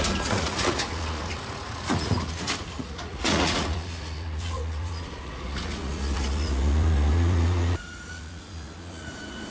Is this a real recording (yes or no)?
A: no